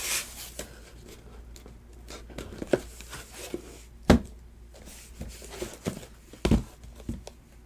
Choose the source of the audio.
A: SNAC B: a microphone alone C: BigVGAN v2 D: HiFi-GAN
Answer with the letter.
B